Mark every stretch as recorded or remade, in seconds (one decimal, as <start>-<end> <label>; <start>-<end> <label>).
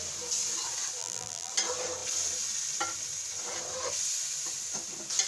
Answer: 0.0-1.0 recorded; 1.0-1.5 remade; 1.5-5.3 recorded